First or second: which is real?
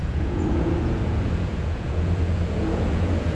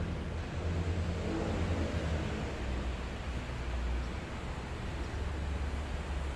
second